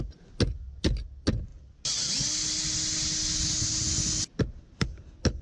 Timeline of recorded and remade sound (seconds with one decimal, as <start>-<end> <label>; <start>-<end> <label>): 0.0-5.4 recorded